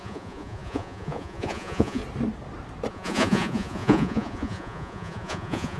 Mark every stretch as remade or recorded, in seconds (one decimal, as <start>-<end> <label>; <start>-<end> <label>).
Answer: 0.0-2.0 remade; 2.0-2.9 recorded; 2.9-5.8 remade